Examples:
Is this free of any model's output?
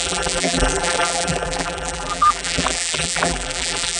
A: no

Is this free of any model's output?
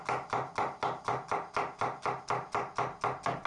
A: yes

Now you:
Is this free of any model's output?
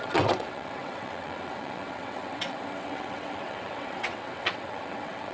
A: no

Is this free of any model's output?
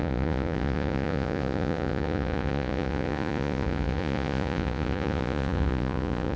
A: no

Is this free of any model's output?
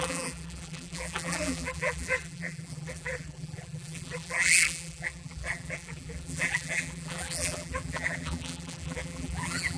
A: no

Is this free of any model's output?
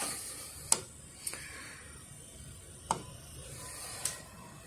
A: yes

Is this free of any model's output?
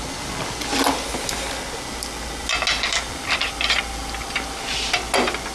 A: yes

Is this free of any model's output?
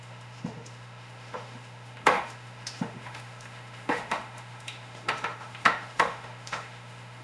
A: no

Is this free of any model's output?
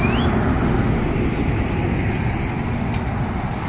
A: yes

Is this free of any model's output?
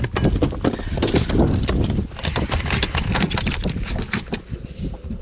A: yes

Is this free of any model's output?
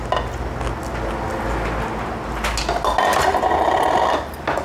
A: yes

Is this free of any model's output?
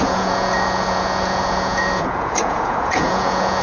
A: no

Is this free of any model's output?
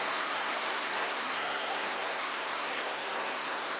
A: no